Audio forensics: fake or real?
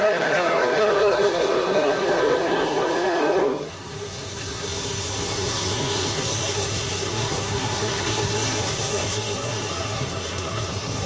fake